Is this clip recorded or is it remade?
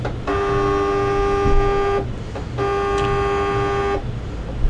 recorded